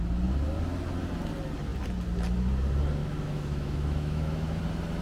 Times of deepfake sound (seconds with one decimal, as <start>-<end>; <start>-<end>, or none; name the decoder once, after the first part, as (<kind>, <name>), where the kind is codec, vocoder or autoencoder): 3.0-4.6 (autoencoder, DAC-VAE)